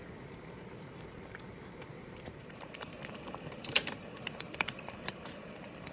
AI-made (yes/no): yes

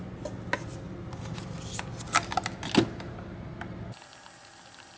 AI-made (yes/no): no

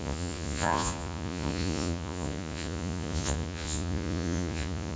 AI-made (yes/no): yes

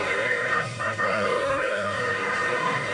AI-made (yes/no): yes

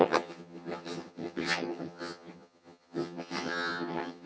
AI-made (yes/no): yes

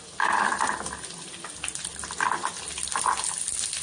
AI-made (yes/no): no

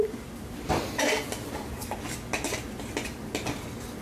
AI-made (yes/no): no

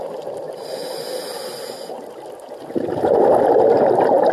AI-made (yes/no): no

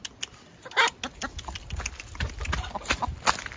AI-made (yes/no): no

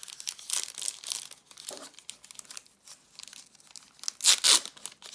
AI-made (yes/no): no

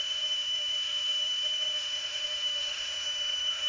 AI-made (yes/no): yes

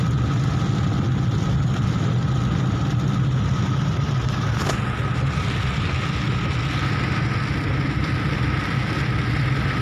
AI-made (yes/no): no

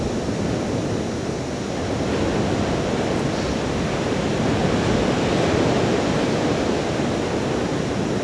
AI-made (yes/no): no